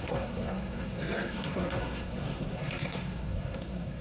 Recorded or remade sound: remade